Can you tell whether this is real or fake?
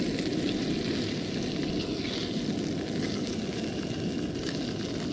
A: real